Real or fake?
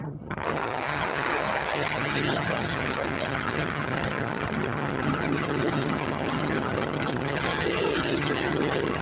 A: fake